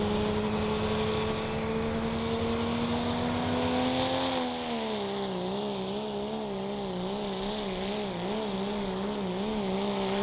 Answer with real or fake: real